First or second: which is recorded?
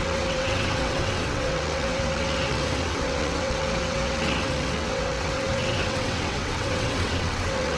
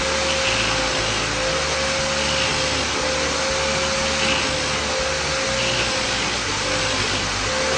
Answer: second